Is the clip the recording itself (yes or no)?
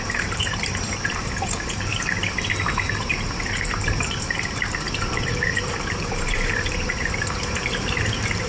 no